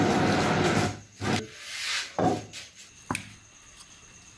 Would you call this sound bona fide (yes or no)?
yes